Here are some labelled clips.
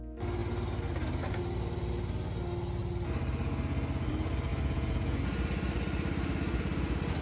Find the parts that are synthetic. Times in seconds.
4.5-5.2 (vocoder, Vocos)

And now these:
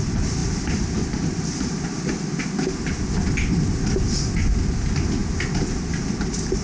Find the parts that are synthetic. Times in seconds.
none

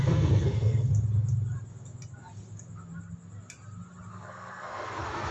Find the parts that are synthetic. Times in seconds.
0.0-0.9 (codec, SNAC); 4.1-5.3

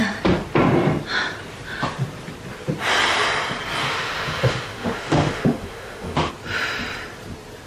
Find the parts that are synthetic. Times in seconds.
3.8-6.3 (autoencoder, DAC-VAE)

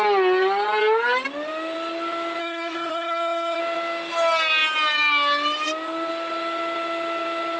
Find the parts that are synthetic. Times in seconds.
2.4-3.6 (codec, SNAC)

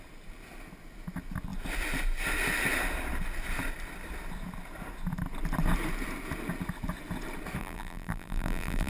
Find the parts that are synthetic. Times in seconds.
7.6-8.9 (vocoder, BigVGAN v2)